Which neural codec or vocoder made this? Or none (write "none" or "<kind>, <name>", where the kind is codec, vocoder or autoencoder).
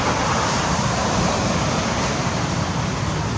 vocoder, BigVGAN v2